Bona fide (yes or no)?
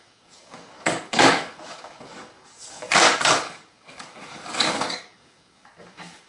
no